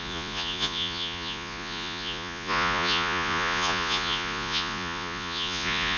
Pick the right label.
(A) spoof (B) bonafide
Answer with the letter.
A